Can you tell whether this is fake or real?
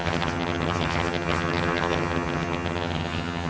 fake